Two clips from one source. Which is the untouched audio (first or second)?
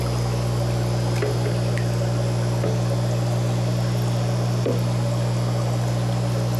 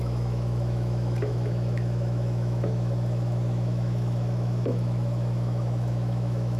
first